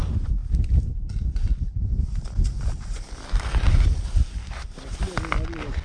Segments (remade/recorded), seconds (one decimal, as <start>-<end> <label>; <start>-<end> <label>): 0.0-5.8 recorded